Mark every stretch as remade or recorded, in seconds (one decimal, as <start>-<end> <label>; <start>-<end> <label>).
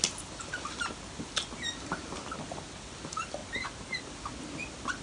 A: 0.0-5.0 recorded